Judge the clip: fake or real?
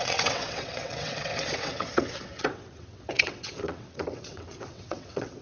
fake